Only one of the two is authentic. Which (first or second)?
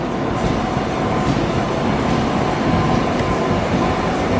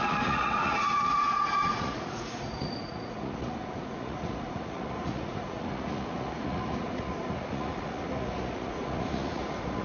first